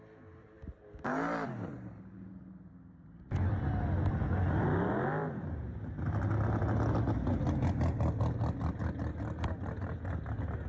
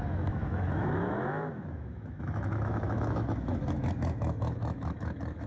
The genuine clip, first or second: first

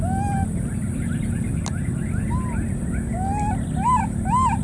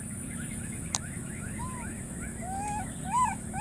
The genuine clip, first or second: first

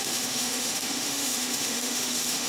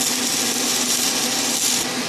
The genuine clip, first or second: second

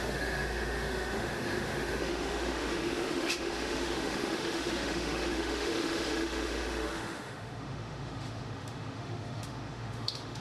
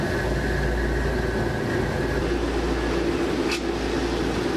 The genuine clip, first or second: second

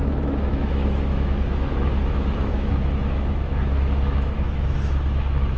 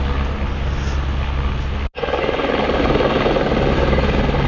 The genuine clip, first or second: second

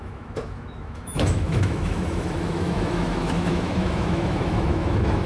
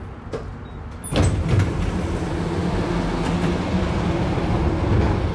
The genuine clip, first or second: second